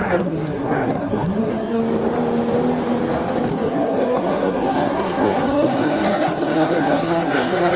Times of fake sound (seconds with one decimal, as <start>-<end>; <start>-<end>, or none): 0.0-1.8; 3.5-7.8

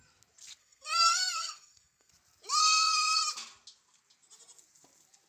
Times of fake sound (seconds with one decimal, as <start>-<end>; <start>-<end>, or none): 0.6-2.1; 2.6-3.2